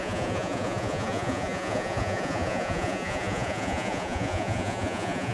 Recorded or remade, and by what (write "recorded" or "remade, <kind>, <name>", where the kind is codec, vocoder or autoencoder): remade, vocoder, Vocos